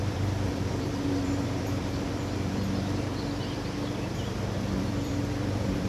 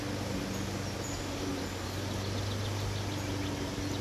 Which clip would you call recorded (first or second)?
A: second